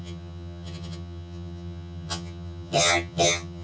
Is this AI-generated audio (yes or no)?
yes